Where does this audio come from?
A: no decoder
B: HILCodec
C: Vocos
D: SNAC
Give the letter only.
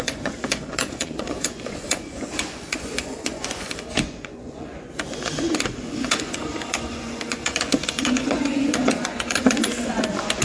C